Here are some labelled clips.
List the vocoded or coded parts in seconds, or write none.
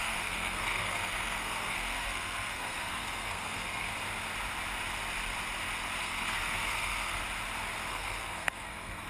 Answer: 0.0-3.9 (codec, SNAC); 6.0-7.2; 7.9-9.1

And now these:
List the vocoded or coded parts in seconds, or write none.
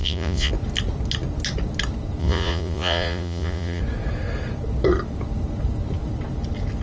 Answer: 0.0-0.5 (vocoder, Vocos); 2.2-3.8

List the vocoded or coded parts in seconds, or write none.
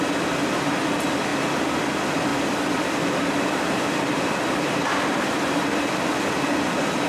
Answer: 1.3-1.8 (vocoder, BigVGAN v2); 2.3-6.3